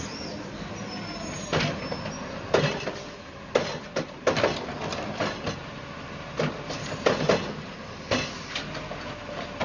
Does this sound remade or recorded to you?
recorded